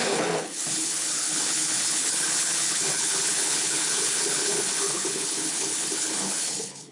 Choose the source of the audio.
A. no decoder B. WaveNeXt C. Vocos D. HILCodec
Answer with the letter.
D